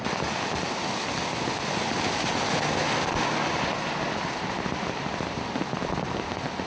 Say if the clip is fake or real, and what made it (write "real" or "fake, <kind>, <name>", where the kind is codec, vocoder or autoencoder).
real